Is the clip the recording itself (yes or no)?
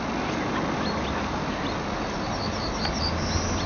yes